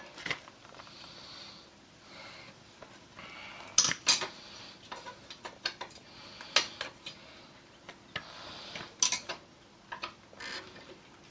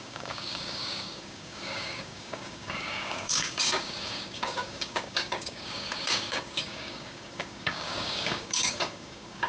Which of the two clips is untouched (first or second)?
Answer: first